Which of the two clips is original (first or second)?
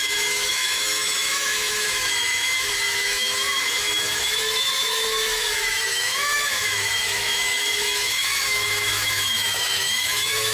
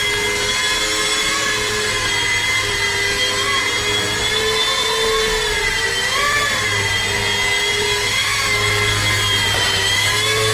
second